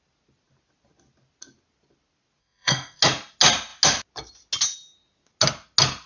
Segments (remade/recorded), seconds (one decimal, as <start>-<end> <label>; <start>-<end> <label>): 0.0-2.4 recorded; 2.4-3.0 remade; 3.0-6.1 recorded

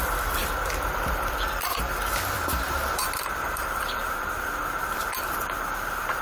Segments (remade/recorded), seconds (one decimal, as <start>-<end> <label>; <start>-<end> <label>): 0.0-0.4 remade; 0.4-0.9 recorded; 0.9-6.2 remade

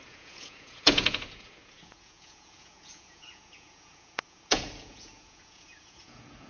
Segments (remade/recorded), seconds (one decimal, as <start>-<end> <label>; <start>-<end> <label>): 0.0-6.5 remade

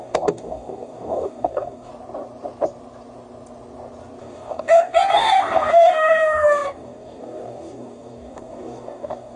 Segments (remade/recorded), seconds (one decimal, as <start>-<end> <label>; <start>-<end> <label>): 0.0-1.9 remade; 1.9-4.2 recorded; 4.2-9.4 remade